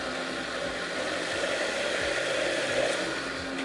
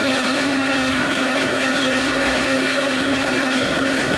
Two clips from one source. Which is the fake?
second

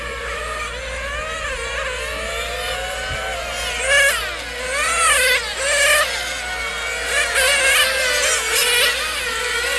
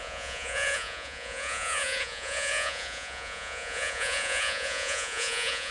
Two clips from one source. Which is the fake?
second